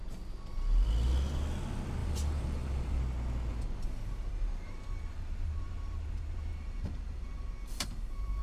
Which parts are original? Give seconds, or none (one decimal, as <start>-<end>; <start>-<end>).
0.0-2.0; 3.0-3.5